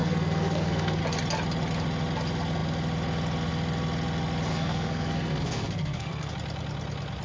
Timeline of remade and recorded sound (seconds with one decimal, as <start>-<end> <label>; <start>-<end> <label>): 0.0-1.0 remade; 1.0-4.5 recorded; 4.5-6.3 remade; 6.3-7.2 recorded